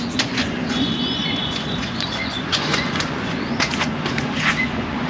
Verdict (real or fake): fake